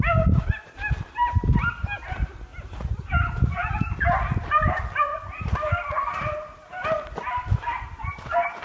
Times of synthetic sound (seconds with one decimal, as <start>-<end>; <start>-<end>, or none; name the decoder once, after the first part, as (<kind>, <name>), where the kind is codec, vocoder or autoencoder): none